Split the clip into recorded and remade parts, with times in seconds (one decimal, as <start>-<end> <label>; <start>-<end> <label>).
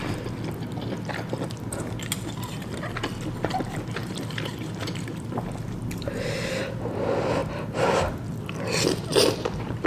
0.0-4.0 recorded; 4.0-5.1 remade; 5.1-7.4 recorded; 7.4-8.1 remade; 8.1-9.9 recorded